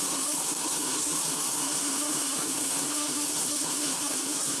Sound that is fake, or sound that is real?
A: fake